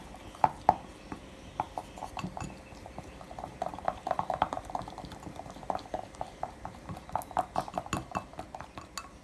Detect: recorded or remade recorded